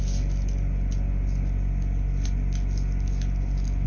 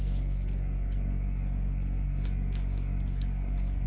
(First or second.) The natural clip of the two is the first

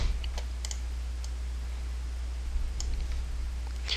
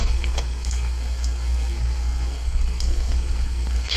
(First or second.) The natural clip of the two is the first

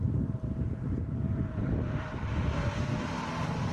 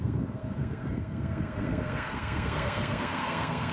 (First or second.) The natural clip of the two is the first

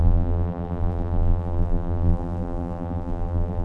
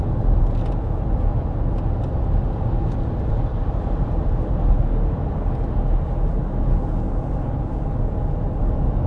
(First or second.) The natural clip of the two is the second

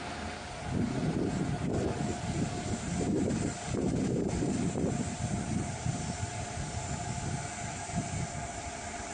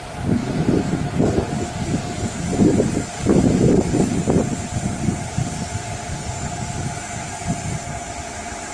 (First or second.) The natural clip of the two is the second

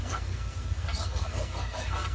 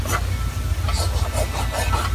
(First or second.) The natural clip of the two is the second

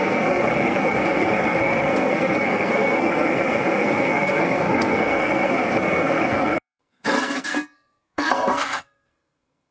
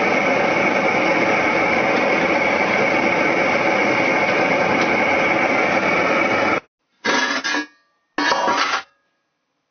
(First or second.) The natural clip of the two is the second